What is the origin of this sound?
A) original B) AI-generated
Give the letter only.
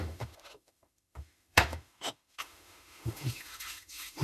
B